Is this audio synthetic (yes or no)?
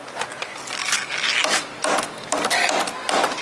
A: no